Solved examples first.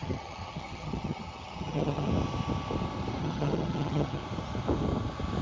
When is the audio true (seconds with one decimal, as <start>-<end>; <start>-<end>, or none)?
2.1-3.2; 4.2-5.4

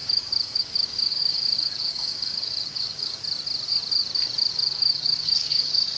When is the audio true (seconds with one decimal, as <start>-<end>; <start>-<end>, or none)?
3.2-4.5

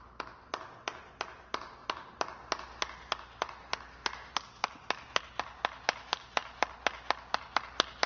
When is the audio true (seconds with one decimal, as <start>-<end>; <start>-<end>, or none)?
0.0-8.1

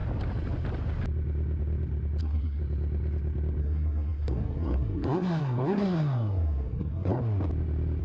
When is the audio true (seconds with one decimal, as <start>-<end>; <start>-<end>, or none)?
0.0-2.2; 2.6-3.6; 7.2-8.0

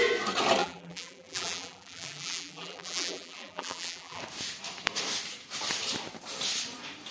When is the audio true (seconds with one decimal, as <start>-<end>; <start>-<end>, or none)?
0.0-0.6; 4.2-7.1

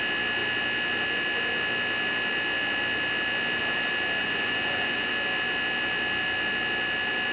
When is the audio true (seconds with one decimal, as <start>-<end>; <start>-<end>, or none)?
0.0-4.2; 5.1-7.3